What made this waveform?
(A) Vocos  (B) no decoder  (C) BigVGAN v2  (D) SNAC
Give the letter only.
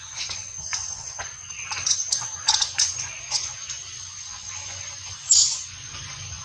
A